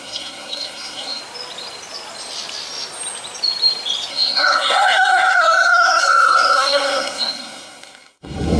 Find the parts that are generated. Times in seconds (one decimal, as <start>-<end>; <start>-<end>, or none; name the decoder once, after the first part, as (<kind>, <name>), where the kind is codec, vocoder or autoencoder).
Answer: 0.0-1.2 (codec, SNAC); 4.1-8.6